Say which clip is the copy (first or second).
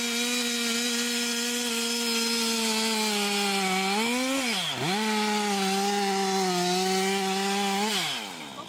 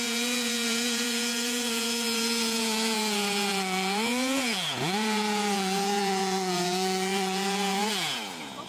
second